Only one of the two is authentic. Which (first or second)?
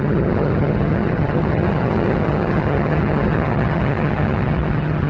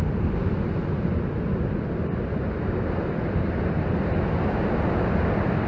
second